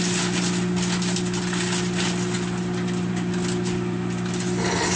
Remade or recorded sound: recorded